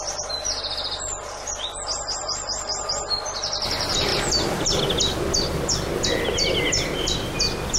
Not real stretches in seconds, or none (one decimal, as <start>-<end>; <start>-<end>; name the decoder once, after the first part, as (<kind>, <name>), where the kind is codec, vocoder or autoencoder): 4.1-4.8 (vocoder, BigVGAN v2)